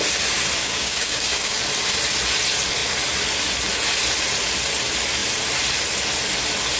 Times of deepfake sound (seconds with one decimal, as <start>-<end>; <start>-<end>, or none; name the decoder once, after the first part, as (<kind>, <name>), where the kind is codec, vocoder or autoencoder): 0.6-1.6 (codec, DAC)